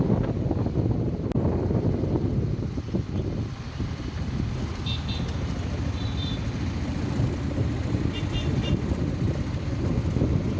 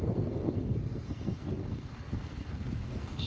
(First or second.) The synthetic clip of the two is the second